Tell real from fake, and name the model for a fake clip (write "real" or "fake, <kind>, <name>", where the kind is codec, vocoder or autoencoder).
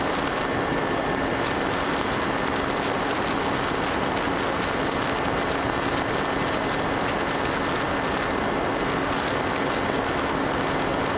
real